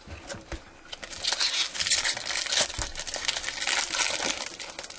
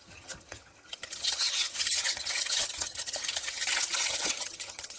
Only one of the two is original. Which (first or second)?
first